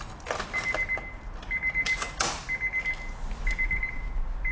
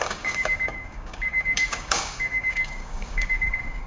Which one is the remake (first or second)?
second